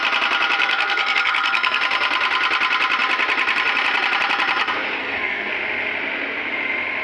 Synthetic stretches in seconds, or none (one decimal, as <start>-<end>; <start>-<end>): 0.6-1.8; 5.0-5.5